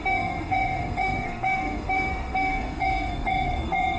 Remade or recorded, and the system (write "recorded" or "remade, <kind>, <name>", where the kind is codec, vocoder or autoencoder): remade, codec, SNAC